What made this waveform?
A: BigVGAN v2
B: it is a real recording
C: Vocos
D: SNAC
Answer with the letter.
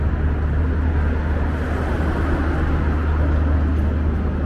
B